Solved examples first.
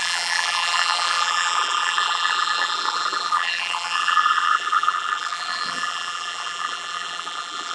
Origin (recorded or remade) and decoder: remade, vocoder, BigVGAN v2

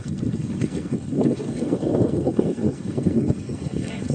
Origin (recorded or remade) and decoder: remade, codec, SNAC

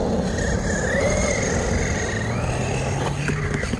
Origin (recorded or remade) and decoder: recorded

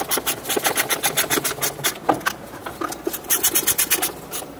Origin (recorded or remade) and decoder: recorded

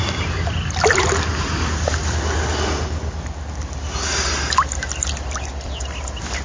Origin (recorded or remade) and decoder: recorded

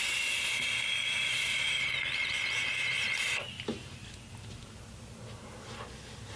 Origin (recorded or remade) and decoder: recorded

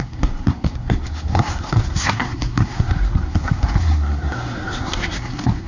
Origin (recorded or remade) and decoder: remade, codec, SNAC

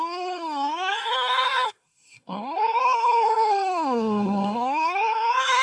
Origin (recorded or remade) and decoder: remade, codec, SNAC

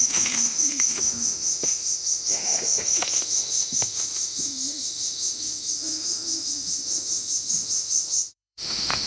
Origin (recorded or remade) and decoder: remade, autoencoder, DAC-VAE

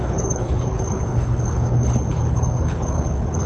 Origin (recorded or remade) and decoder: remade, codec, HILCodec